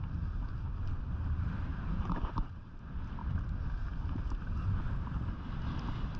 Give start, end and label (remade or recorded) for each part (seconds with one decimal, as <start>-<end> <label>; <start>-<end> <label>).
0.0-1.7 recorded; 1.7-2.8 remade; 2.8-6.2 recorded